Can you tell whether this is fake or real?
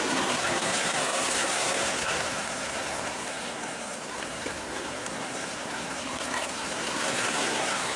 fake